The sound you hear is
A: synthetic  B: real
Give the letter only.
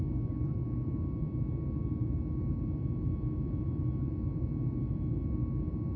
B